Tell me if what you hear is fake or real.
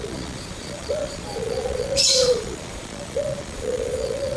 fake